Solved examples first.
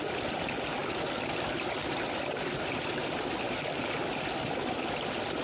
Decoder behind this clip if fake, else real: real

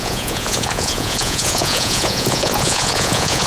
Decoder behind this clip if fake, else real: fake, vocoder, Vocos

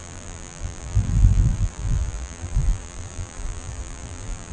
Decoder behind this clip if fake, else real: fake, vocoder, BigVGAN v2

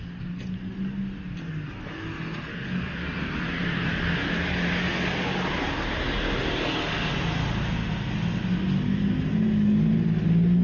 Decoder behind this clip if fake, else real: real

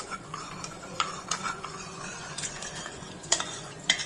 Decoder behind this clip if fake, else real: fake, vocoder, Vocos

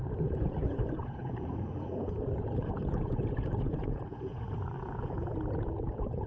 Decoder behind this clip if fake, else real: fake, vocoder, Vocos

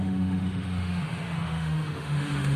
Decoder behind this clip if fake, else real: fake, autoencoder, DAC-VAE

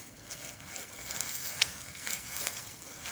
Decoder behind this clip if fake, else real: fake, codec, SNAC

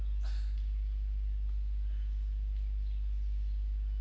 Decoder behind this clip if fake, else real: real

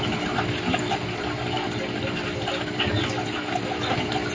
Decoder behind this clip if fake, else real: real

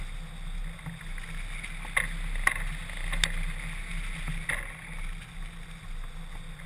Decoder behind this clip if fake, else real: real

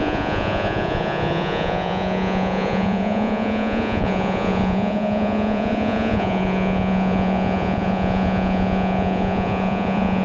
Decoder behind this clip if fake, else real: fake, vocoder, Vocos